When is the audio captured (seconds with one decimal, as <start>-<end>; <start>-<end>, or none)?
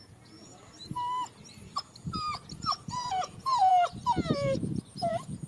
0.5-2.7; 3.7-4.6